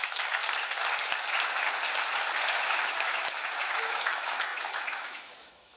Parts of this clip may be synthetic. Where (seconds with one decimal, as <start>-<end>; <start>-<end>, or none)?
0.0-0.4; 2.6-5.8